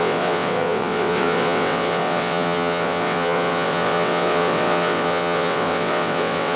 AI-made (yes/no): yes